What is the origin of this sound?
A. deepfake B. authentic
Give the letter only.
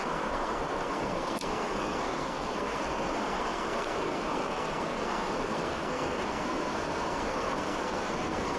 A